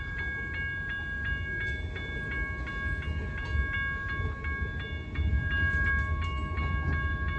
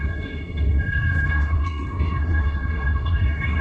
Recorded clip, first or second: first